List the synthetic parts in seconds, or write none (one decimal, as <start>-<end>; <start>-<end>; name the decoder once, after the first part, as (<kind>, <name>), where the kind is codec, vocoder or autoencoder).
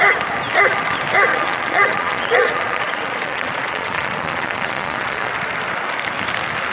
1.3-5.3 (vocoder, Vocos)